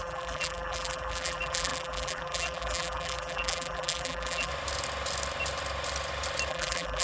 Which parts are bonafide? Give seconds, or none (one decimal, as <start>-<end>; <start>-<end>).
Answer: 4.5-6.5